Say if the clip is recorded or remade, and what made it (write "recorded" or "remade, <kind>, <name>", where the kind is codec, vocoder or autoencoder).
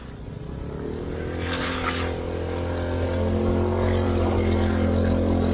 recorded